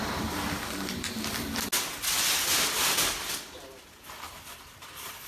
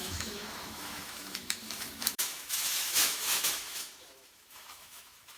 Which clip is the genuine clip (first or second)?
first